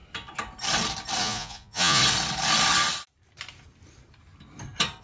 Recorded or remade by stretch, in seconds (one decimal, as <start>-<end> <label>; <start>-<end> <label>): 0.0-1.2 recorded; 1.2-2.0 remade; 2.0-5.0 recorded